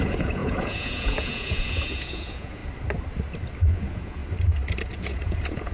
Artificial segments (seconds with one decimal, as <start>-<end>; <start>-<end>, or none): 0.0-2.6; 3.6-4.2; 5.0-5.7